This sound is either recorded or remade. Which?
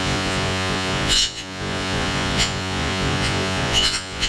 remade